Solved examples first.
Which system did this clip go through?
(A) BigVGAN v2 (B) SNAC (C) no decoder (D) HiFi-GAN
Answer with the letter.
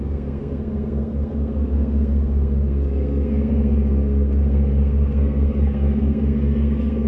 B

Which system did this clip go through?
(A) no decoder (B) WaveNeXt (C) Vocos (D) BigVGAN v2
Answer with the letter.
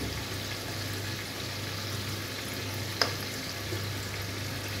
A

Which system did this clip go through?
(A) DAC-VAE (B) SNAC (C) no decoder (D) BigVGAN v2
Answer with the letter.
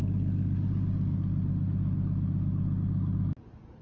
C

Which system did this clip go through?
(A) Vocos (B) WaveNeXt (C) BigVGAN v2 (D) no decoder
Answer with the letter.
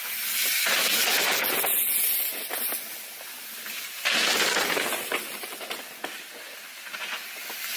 D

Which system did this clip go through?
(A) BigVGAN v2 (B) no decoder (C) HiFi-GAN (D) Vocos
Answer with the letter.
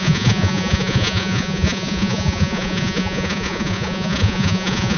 D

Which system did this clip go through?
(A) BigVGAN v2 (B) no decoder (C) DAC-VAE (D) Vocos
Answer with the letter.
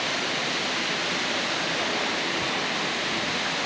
B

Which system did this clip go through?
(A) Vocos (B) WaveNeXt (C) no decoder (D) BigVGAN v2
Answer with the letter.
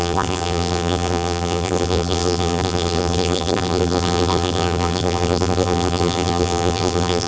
D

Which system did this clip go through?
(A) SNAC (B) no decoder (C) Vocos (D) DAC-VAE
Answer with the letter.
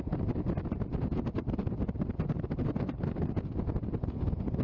B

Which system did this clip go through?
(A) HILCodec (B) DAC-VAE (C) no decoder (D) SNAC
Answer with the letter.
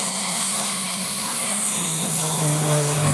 D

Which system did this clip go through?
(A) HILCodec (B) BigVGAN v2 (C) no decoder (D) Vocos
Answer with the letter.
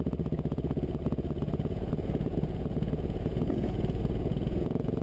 D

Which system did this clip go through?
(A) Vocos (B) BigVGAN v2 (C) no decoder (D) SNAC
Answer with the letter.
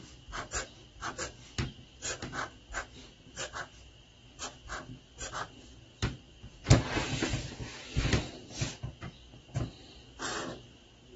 C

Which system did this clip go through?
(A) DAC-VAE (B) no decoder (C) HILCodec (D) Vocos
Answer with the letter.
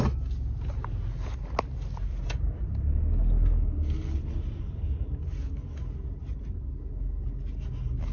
B